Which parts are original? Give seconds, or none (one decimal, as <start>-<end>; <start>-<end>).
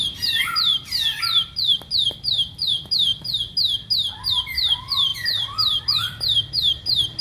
0.7-1.2; 3.1-4.3; 5.1-5.8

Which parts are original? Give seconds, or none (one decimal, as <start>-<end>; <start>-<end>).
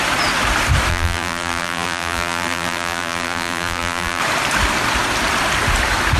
0.0-0.9; 4.2-6.2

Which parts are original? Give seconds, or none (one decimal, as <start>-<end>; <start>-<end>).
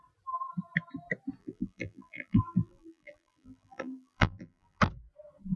0.0-1.4; 4.8-5.6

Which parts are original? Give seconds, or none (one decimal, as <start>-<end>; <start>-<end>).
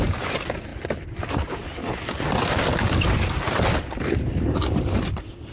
0.0-5.5